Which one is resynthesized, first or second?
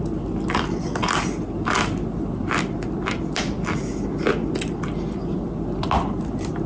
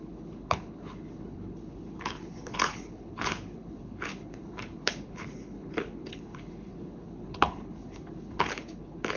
second